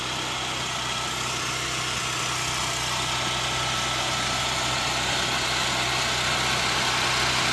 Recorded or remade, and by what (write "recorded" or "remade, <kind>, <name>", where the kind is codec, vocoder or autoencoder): recorded